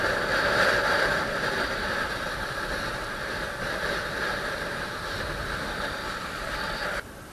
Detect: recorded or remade recorded